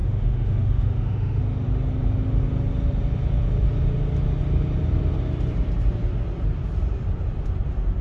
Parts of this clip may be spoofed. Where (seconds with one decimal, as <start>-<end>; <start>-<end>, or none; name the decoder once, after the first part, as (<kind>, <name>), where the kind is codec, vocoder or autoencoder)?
0.0-1.4 (autoencoder, DAC-VAE)